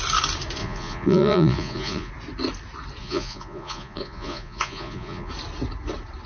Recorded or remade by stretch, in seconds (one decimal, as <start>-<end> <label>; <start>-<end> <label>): 0.0-0.6 recorded; 0.6-2.1 remade; 2.1-3.0 recorded; 3.0-5.3 remade; 5.3-6.3 recorded